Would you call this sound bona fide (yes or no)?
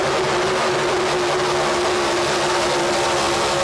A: yes